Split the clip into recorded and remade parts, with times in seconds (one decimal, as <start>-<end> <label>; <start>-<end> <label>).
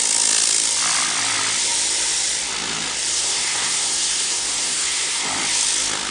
0.0-3.1 recorded; 3.1-5.2 remade; 5.2-6.1 recorded